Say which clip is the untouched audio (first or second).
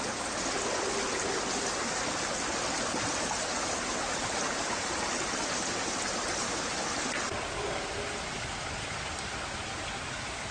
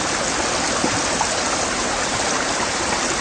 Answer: first